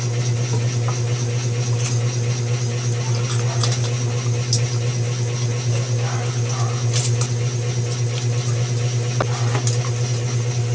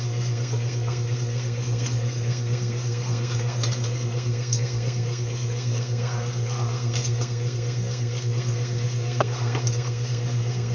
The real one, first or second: first